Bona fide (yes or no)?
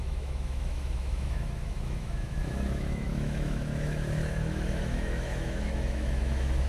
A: no